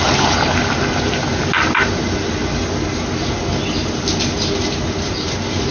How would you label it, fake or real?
real